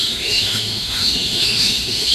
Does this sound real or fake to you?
fake